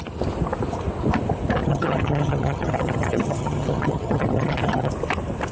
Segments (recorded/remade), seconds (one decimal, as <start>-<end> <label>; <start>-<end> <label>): 0.0-1.6 recorded; 1.6-4.9 remade; 4.9-5.5 recorded

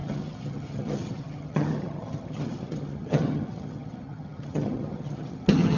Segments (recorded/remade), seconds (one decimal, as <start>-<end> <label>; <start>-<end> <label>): 0.0-5.8 remade

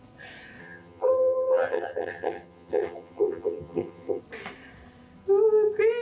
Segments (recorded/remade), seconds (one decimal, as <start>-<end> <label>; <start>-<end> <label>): 0.0-0.6 recorded; 0.6-4.2 remade; 4.2-6.0 recorded

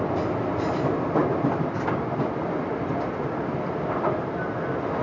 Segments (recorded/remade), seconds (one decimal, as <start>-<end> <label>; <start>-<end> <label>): 0.0-5.0 recorded

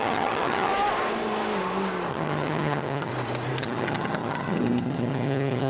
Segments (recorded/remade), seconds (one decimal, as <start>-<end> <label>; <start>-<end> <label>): 0.0-0.7 remade; 0.7-2.1 recorded; 2.1-3.1 remade; 3.1-3.6 recorded; 3.6-5.7 remade

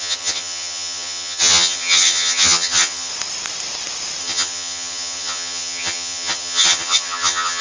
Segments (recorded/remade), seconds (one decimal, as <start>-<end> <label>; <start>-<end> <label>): 0.0-3.1 remade; 3.1-4.2 recorded; 4.2-7.6 remade

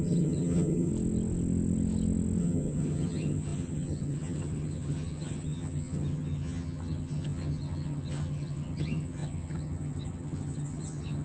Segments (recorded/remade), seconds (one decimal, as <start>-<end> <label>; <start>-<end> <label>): 0.0-0.9 remade; 0.9-2.4 recorded; 2.4-11.2 remade